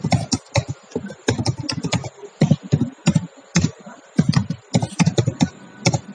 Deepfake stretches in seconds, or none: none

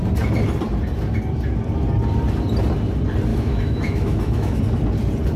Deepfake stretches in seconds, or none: 3.3-4.6 (autoencoder, DAC-VAE)